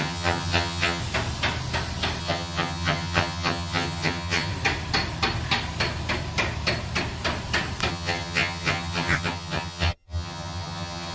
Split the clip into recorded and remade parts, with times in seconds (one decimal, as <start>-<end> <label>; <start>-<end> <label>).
0.0-1.0 remade; 1.0-2.2 recorded; 2.2-4.5 remade; 4.5-7.9 recorded; 7.9-11.1 remade